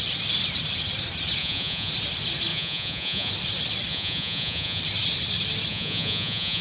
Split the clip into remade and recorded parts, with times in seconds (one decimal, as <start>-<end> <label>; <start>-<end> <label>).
0.0-1.4 recorded; 1.4-1.9 remade; 1.9-2.5 recorded; 2.5-3.3 remade; 3.3-3.9 recorded; 3.9-4.8 remade; 4.8-5.7 recorded; 5.7-6.6 remade